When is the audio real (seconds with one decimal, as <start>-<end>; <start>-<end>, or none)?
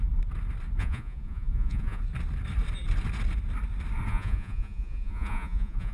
0.0-0.8; 2.0-4.1